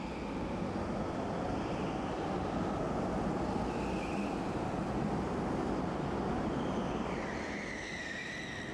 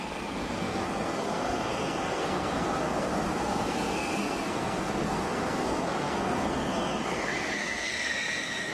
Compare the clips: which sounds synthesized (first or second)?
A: second